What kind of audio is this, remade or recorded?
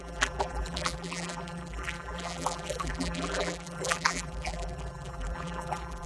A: remade